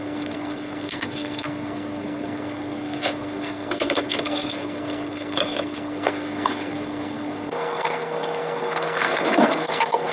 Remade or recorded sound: remade